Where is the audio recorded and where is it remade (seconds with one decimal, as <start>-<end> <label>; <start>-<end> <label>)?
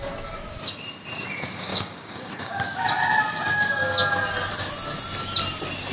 0.0-1.7 recorded; 1.7-2.5 remade; 2.5-5.9 recorded